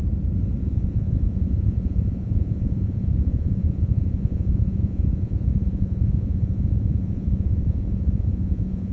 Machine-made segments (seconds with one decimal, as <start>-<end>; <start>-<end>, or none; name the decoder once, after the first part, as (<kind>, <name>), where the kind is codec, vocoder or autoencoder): 0.6-8.9 (vocoder, Vocos)